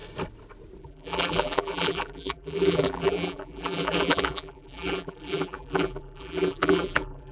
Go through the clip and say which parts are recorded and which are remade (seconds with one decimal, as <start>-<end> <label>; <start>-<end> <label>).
0.0-0.8 recorded; 0.8-7.3 remade